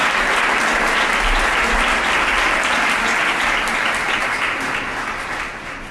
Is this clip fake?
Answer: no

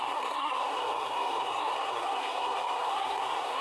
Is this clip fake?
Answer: yes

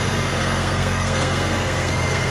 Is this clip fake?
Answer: yes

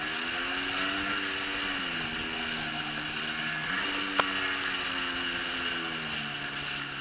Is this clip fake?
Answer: no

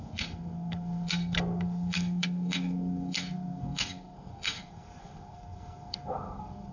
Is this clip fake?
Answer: yes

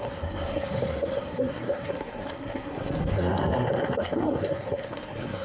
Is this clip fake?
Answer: yes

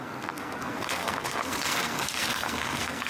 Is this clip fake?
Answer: yes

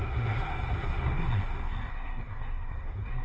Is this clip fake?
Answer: yes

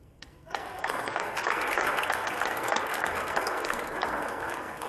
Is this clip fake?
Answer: yes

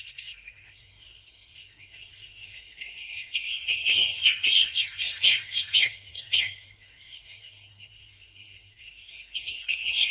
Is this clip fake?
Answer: yes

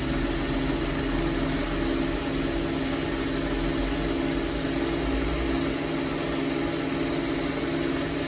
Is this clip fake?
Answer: no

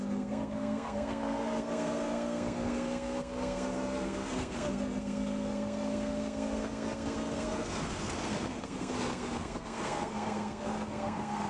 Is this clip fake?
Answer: yes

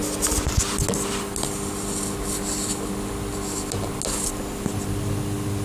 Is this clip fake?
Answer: no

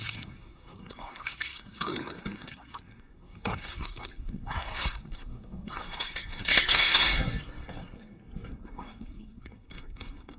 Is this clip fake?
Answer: yes